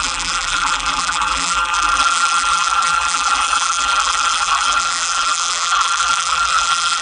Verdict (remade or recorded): remade